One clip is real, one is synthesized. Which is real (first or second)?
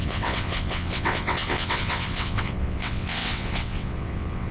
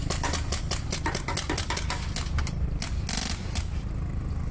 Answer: second